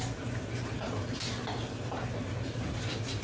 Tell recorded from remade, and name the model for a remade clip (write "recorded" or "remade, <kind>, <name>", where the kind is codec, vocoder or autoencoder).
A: recorded